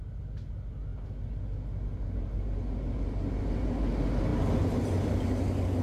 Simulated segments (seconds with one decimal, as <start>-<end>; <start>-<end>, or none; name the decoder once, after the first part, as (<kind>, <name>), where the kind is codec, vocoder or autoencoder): none